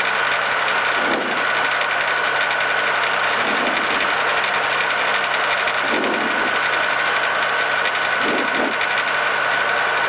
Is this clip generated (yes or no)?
no